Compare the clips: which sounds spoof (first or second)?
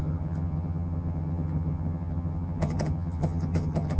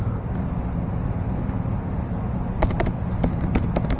first